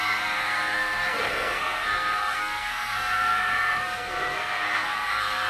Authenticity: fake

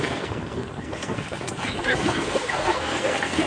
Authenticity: fake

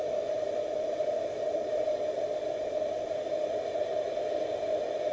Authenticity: real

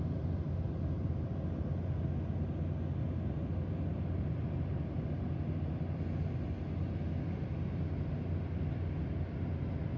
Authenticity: real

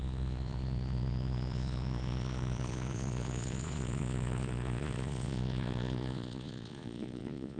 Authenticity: fake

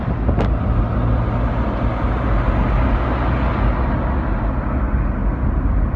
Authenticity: real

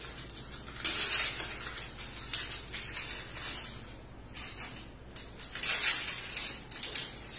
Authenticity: real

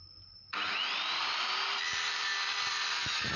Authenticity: fake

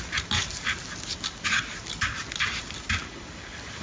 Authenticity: real